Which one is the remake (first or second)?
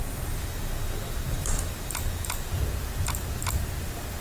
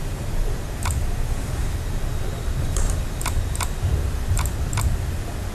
second